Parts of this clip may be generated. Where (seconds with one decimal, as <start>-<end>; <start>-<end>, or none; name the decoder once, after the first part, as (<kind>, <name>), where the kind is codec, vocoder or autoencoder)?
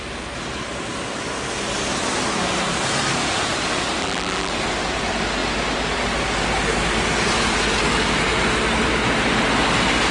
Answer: 4.0-4.5 (vocoder, BigVGAN v2)